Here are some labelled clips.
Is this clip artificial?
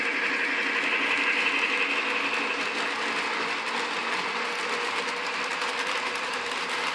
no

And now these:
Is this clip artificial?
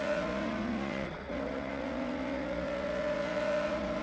yes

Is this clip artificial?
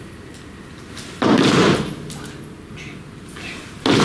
no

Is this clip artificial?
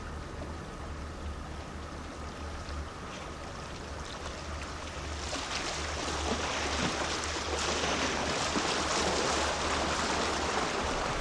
no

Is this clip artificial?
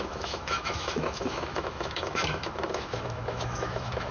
yes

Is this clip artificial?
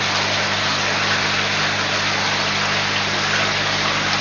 no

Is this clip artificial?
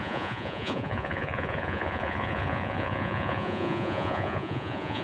yes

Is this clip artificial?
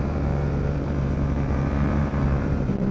yes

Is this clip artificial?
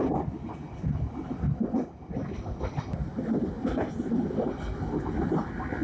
no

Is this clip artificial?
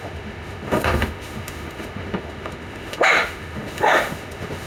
yes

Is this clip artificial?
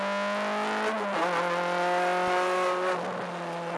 no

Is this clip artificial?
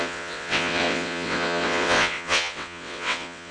yes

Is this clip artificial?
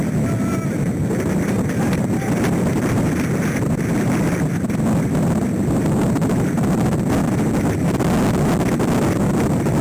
no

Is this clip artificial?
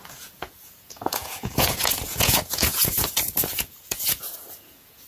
yes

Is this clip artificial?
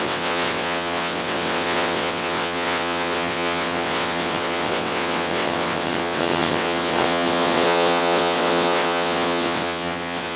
yes